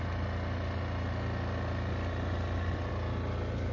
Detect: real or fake real